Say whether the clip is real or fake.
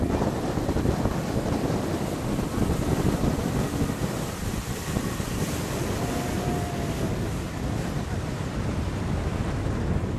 real